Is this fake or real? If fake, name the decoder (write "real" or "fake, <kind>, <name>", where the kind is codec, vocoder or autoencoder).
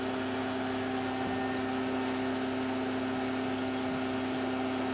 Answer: real